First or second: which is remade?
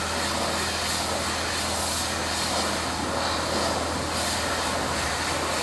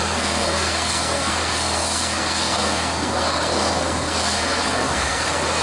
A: second